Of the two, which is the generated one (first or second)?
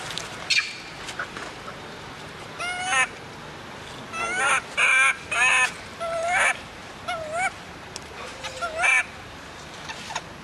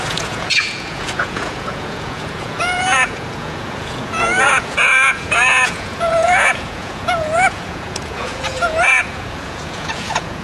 second